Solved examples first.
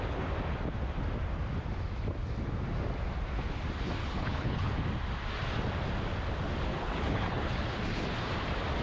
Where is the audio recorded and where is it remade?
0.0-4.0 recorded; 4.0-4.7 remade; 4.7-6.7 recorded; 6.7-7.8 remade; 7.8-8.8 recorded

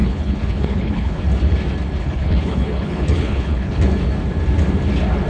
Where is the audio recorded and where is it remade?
0.0-1.2 remade; 1.2-2.0 recorded; 2.0-3.8 remade; 3.8-5.3 recorded

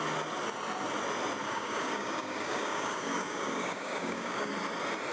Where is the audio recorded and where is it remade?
0.0-1.4 recorded; 1.4-4.5 remade; 4.5-5.1 recorded

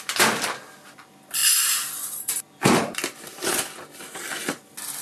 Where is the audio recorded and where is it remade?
0.0-1.4 recorded; 1.4-4.4 remade; 4.4-5.0 recorded

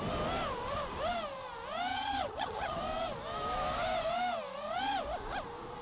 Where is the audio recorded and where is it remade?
0.0-1.9 recorded; 1.9-2.8 remade; 2.8-5.8 recorded